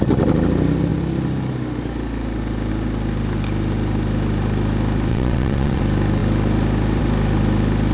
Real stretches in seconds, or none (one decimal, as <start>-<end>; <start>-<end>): 0.0-5.1; 5.8-7.9